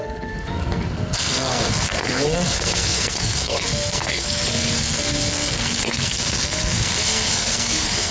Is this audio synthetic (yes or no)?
yes